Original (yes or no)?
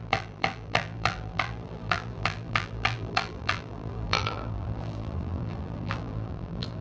no